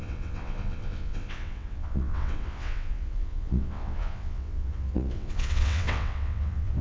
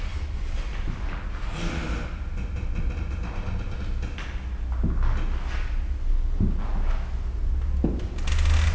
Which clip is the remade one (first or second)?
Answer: first